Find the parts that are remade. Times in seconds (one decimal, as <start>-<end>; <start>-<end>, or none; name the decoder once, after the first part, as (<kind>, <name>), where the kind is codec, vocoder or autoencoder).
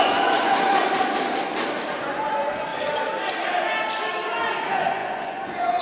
0.0-0.7 (vocoder, Vocos); 1.9-2.7; 4.6-5.8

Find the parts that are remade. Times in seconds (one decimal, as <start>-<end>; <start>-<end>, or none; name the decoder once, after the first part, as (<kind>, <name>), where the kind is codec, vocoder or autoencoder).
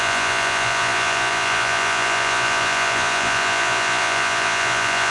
0.0-5.1 (vocoder, Vocos)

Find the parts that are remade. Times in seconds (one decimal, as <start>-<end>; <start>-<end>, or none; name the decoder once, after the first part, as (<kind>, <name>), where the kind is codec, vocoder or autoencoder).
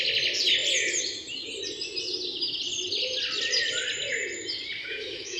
4.8-5.4 (autoencoder, DAC-VAE)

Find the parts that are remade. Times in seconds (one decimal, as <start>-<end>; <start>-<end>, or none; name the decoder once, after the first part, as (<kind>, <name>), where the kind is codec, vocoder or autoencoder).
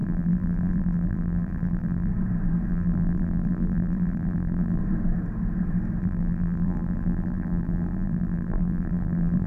0.0-2.1 (vocoder, BigVGAN v2); 2.7-4.8; 6.0-9.5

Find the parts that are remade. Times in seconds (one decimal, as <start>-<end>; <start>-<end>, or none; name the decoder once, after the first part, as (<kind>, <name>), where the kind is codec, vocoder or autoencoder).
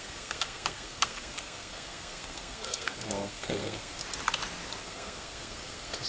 0.0-4.0 (codec, SNAC); 4.8-6.1